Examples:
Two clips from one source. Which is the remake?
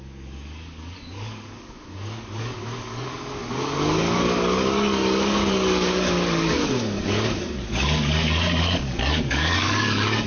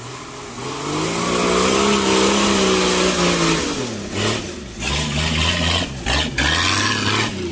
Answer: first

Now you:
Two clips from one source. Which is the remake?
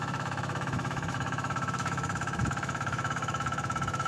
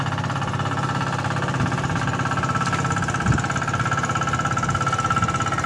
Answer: first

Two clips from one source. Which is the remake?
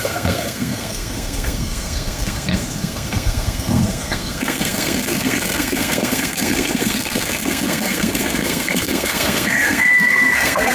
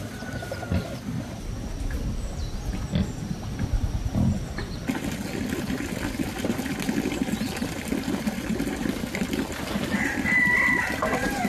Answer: first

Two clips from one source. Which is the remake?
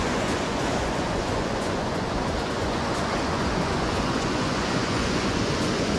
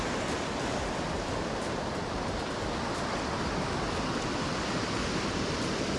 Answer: first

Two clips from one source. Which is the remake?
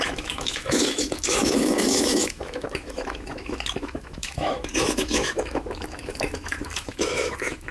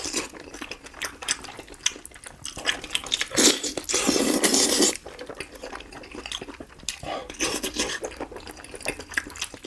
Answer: first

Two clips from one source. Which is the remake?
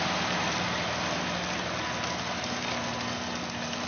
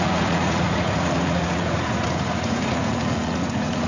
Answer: second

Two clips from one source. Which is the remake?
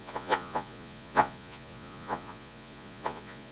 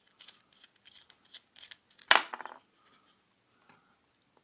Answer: first